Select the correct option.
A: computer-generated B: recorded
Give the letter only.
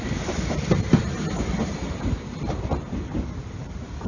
B